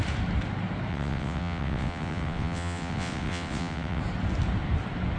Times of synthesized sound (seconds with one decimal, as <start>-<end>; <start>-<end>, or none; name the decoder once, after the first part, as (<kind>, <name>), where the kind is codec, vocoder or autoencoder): 0.9-4.0 (vocoder, WaveNeXt)